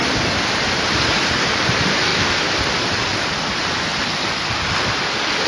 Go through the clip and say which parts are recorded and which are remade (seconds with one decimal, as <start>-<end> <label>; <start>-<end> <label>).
0.0-0.7 recorded; 0.7-2.1 remade; 2.1-5.5 recorded